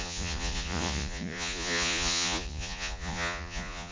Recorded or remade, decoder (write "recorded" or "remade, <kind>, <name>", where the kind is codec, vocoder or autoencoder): remade, vocoder, Vocos